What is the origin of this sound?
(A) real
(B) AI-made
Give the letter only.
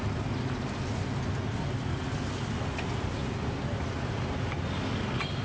A